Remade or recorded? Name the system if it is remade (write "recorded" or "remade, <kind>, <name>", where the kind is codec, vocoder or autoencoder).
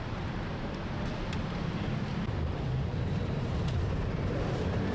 remade, vocoder, BigVGAN v2